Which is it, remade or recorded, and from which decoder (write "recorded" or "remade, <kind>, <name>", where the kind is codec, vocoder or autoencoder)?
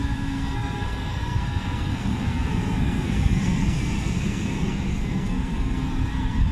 remade, codec, SNAC